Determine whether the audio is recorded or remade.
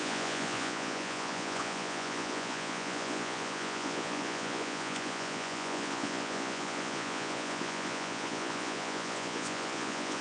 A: remade